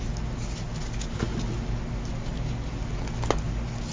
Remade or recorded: recorded